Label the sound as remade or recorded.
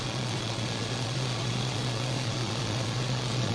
remade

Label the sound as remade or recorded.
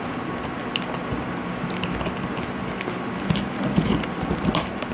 recorded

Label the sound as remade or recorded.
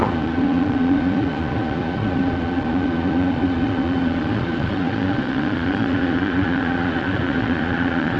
remade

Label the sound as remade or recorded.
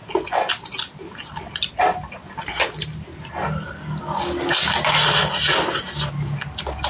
recorded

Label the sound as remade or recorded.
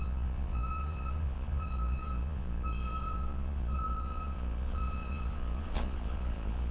remade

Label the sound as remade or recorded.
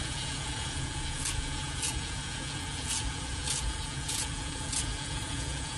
remade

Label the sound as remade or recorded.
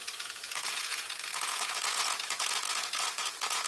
remade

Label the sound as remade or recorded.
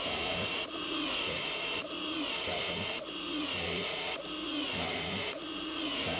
remade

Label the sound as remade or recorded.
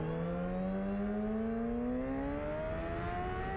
recorded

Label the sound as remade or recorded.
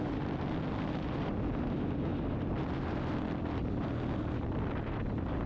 recorded